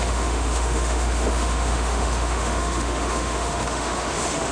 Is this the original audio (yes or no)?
no